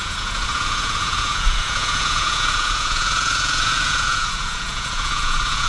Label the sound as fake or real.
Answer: fake